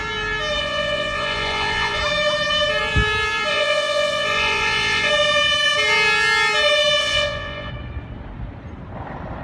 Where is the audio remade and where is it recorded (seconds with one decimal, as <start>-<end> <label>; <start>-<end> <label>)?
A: 0.0-0.6 recorded; 0.6-2.0 remade; 2.0-3.5 recorded; 3.5-5.1 remade; 5.1-7.0 recorded; 7.0-7.7 remade; 7.7-9.4 recorded